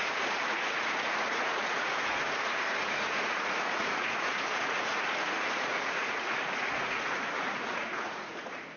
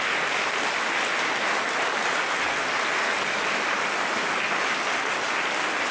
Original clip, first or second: second